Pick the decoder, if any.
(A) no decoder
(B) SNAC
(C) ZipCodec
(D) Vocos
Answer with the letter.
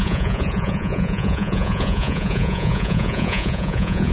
D